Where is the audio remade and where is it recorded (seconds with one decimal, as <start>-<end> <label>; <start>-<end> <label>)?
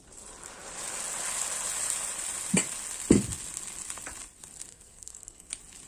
0.0-4.7 recorded; 4.7-5.5 remade; 5.5-5.9 recorded